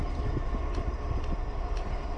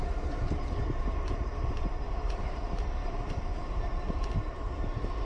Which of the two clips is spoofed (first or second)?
second